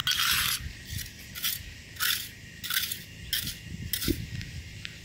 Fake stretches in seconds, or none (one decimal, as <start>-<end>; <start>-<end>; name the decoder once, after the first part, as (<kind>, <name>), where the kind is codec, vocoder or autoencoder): none